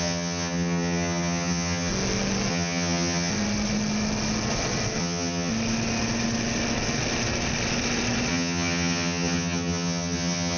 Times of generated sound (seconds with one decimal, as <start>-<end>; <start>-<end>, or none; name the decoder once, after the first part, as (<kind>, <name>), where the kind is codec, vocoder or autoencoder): 0.0-1.9 (vocoder, HiFi-GAN); 2.5-3.3; 5.0-5.5; 8.3-10.6